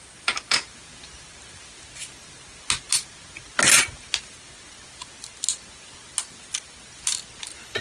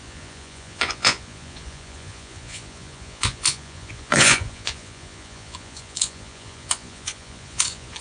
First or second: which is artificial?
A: second